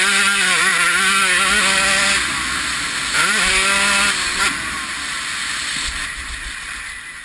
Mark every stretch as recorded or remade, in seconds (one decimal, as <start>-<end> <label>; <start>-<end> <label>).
0.0-7.2 recorded